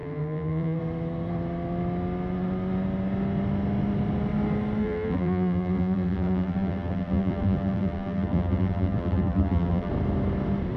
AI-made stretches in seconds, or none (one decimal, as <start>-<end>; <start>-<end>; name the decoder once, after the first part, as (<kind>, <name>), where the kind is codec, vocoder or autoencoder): 0.0-0.8 (vocoder, BigVGAN v2); 4.8-9.9